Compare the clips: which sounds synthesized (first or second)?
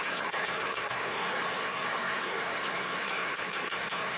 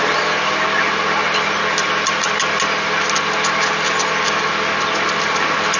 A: first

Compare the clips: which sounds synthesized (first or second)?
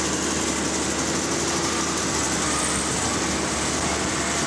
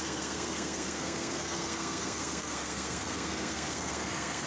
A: second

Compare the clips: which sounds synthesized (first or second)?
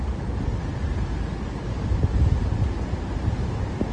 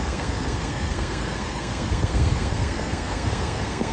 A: second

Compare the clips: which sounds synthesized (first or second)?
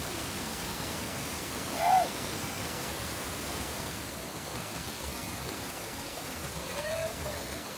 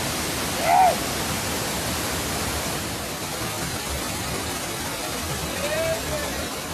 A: first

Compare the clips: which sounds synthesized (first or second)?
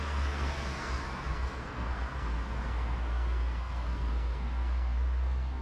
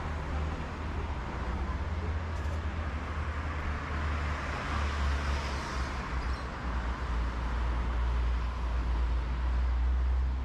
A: first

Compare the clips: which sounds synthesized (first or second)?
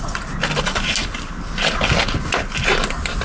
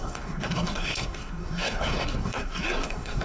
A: second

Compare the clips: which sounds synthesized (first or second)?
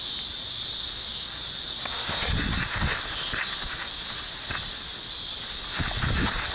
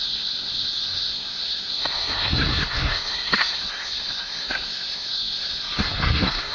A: second